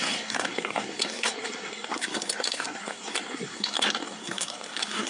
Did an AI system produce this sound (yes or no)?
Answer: yes